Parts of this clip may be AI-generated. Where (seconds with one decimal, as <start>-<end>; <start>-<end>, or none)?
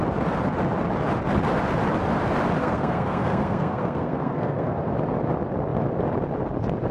2.6-4.9